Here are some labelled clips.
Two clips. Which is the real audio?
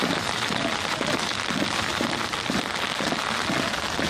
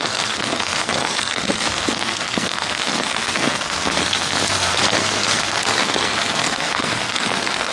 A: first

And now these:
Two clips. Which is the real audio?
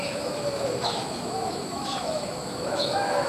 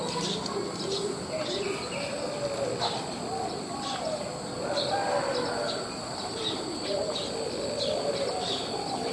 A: second